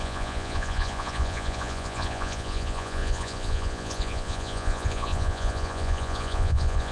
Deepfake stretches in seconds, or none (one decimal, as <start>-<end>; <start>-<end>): 0.0-6.9